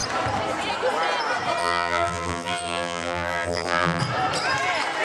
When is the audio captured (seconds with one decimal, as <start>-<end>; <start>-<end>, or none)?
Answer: 0.0-1.6; 4.0-5.0